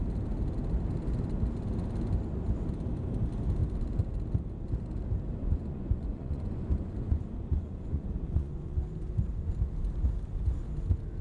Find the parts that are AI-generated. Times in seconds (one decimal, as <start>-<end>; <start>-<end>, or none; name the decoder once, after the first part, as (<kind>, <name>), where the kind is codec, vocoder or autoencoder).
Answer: 5.4-8.8 (vocoder, Vocos)